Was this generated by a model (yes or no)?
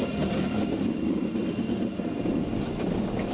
no